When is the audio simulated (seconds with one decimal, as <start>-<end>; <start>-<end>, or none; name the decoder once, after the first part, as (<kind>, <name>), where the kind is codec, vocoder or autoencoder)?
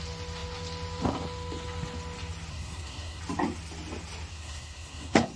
2.5-3.2 (codec, SNAC); 4.3-5.4